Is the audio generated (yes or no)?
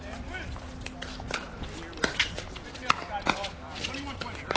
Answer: no